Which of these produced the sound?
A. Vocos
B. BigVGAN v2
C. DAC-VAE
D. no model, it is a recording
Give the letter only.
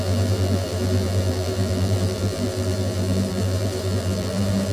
B